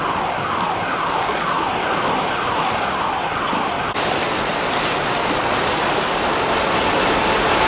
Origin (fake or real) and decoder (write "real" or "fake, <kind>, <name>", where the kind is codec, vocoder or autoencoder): real